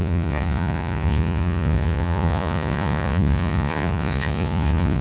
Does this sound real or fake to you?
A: fake